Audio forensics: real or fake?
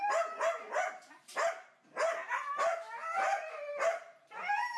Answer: real